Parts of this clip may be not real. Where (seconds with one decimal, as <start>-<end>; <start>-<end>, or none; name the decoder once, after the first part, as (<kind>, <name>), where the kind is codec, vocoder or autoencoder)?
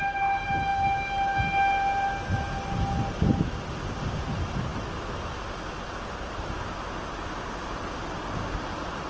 none